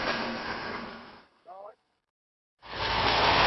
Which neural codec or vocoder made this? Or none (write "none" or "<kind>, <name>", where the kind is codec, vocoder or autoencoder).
codec, SNAC